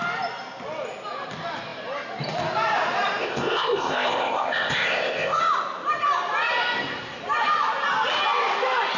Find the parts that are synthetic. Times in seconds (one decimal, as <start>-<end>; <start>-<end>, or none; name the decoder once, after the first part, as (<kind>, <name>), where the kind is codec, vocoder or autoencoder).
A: 3.2-5.4 (codec, ZipCodec)